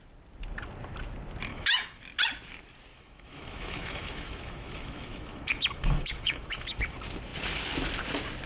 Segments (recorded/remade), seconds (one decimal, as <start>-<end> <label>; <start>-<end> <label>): 0.0-1.5 recorded; 1.5-2.0 remade; 2.0-2.9 recorded; 2.9-6.8 remade; 6.8-8.5 recorded